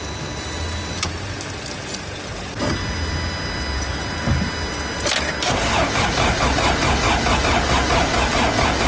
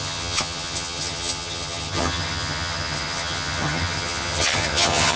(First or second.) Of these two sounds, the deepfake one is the second